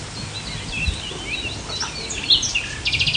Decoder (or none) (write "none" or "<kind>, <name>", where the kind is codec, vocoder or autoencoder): none